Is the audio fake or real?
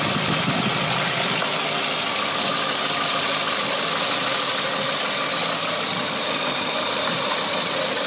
real